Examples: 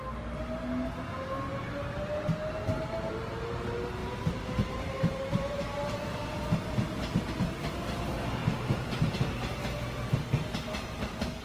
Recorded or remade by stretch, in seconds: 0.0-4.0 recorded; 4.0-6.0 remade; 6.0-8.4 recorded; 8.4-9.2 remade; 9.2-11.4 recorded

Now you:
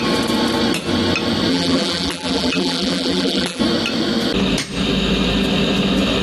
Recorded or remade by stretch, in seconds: 0.0-1.5 recorded; 1.5-3.6 remade; 3.6-6.2 recorded

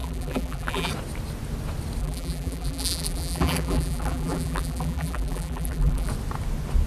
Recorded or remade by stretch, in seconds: 0.0-0.9 remade; 0.9-2.0 recorded; 2.0-6.1 remade; 6.1-6.9 recorded

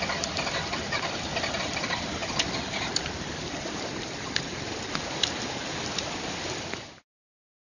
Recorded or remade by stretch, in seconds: 0.0-2.2 recorded; 2.2-6.5 remade; 6.5-7.6 recorded

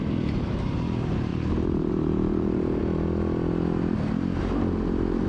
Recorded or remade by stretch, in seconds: 0.0-2.8 remade; 2.8-4.4 recorded; 4.4-5.3 remade

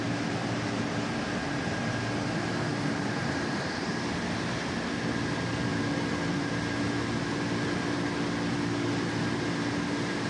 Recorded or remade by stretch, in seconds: 0.0-2.7 recorded; 2.7-3.7 remade; 3.7-5.7 recorded; 5.7-6.5 remade; 6.5-10.3 recorded